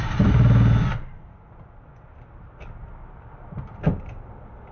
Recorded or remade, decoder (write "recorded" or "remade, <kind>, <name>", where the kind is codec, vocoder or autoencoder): recorded